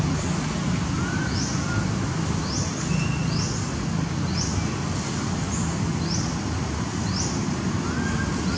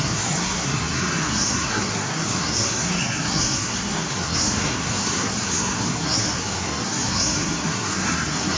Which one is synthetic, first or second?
second